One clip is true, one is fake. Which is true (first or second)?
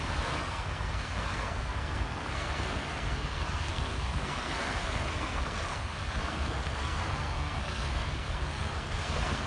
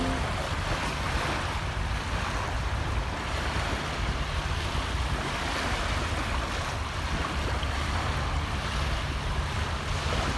second